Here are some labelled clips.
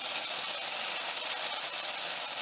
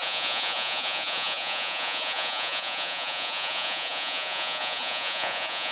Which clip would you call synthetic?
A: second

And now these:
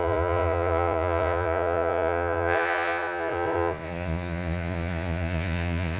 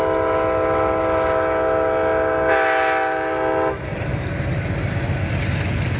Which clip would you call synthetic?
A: first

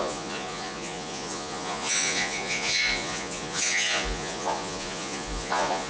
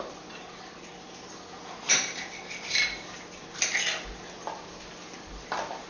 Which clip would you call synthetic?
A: first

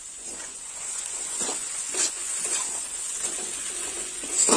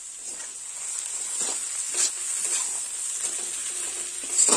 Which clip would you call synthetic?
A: first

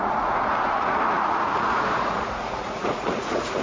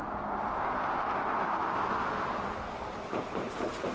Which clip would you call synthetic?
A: first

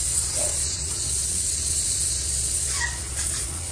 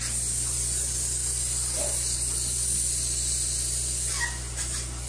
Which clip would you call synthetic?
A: first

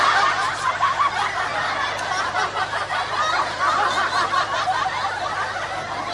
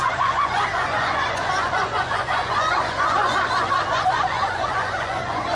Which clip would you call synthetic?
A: second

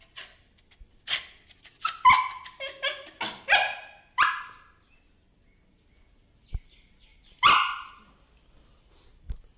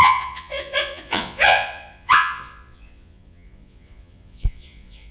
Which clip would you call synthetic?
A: second